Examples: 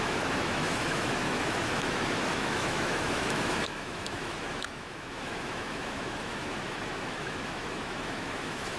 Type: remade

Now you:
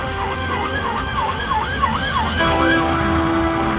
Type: remade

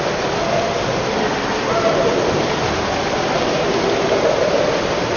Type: recorded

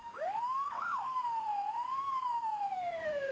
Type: remade